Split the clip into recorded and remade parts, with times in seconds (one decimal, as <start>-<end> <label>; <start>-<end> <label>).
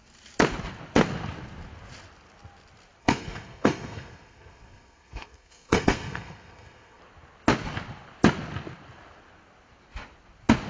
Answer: 0.0-3.0 recorded; 3.0-7.0 remade; 7.0-10.7 recorded